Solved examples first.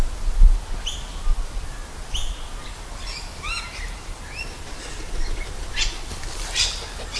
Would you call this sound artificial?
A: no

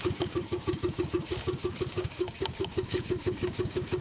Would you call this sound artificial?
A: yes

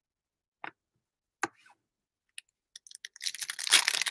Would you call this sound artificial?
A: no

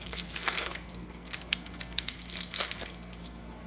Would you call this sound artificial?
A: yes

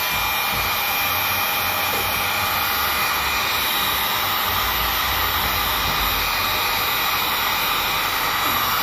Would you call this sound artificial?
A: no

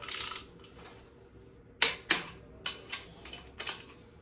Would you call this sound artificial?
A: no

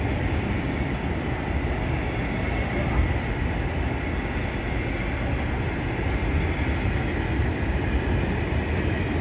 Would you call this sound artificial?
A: no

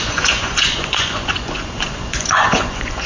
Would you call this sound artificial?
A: yes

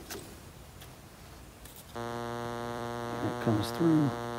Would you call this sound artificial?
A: yes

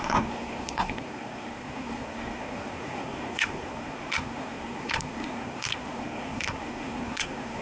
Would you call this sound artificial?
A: yes